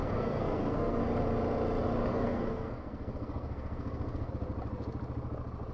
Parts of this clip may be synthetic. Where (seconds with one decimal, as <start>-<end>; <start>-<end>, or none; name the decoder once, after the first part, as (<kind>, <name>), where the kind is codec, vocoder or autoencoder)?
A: 0.0-1.0 (codec, SNAC); 2.1-4.3